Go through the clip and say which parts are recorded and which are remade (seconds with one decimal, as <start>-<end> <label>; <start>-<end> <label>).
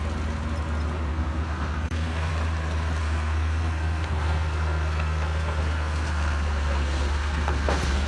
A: 0.0-1.1 recorded; 1.1-2.3 remade; 2.3-3.0 recorded; 3.0-8.1 remade